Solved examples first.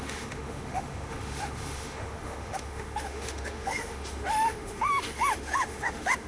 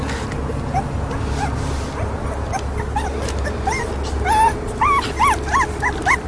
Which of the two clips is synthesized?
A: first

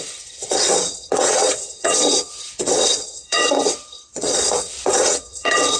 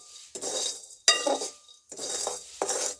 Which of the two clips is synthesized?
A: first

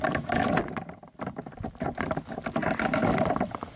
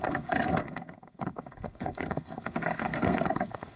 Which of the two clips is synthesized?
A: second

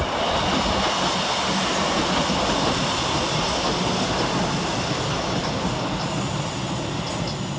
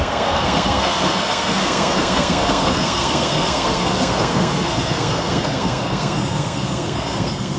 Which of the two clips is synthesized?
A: second